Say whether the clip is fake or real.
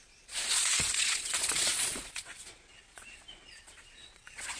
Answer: fake